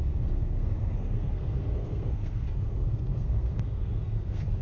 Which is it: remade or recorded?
remade